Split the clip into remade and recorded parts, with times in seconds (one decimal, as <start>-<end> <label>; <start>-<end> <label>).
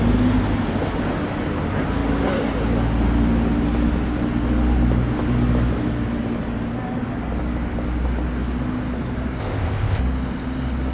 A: 0.0-9.4 recorded; 9.4-10.0 remade; 10.0-10.9 recorded